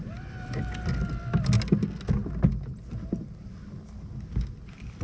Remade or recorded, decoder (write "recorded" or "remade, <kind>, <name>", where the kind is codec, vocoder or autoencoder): recorded